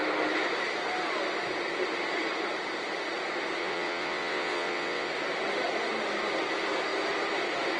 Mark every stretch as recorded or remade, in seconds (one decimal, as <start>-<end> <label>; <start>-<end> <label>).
0.0-3.6 recorded; 3.6-5.1 remade; 5.1-7.8 recorded